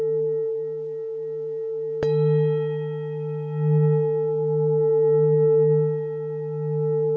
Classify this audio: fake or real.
real